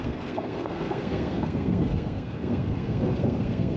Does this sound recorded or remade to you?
remade